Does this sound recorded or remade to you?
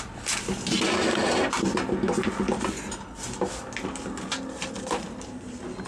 recorded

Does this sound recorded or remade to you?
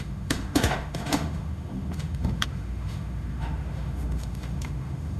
remade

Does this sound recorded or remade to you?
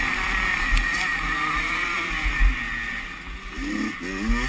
recorded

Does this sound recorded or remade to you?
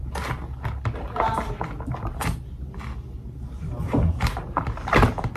recorded